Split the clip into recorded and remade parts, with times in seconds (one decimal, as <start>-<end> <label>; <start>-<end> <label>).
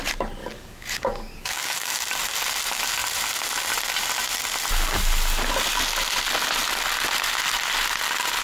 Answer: 0.0-0.4 recorded; 0.4-2.0 remade; 2.0-8.4 recorded